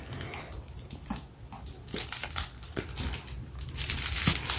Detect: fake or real real